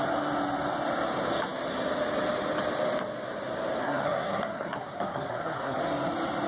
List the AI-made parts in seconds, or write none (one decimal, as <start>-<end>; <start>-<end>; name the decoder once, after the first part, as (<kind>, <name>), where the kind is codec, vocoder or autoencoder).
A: 3.8-5.8 (codec, SNAC)